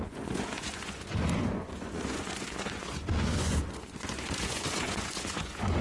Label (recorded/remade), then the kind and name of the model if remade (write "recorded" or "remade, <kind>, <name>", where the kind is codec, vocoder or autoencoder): remade, vocoder, Vocos